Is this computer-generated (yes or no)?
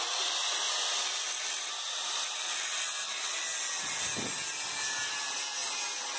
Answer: no